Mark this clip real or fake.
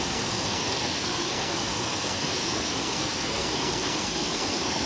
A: fake